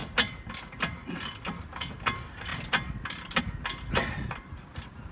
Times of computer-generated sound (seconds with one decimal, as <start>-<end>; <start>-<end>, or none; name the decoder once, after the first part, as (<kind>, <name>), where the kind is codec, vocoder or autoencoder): none